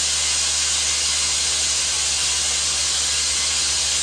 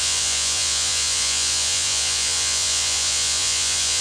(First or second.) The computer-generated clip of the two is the second